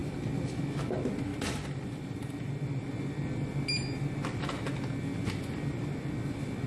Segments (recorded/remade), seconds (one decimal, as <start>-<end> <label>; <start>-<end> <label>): 0.0-0.6 remade; 0.6-1.3 recorded; 1.3-2.6 remade; 2.6-6.7 recorded